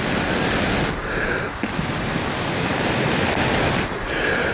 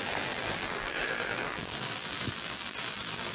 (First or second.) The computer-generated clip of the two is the second